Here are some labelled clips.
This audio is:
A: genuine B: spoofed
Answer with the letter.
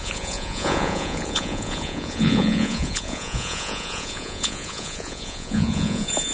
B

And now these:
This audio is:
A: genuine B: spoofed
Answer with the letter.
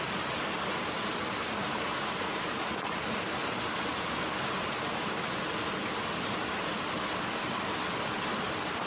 A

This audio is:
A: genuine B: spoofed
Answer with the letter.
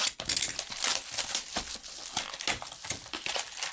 A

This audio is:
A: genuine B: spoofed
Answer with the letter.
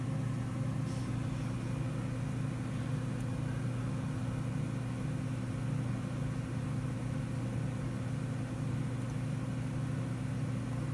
A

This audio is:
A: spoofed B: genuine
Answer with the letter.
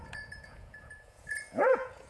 A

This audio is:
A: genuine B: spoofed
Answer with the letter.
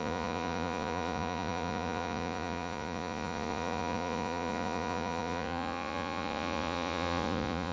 B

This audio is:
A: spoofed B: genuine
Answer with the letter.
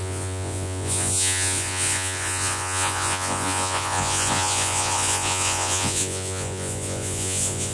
A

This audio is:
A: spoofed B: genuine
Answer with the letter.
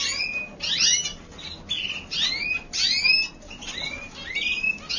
B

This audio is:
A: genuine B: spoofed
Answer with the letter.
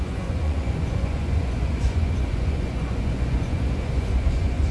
B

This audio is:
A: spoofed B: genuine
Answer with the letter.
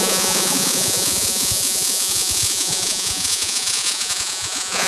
A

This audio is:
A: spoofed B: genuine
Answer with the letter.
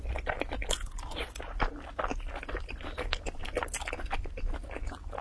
B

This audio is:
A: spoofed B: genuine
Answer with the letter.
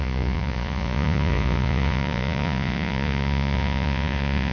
A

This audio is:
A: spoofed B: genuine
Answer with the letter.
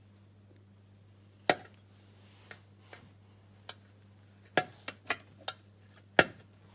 B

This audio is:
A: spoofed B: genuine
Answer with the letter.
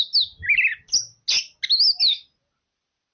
B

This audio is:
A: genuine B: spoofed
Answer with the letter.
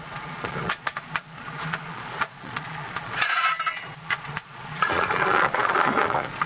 B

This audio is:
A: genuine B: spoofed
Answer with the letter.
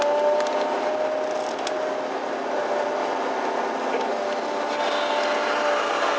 A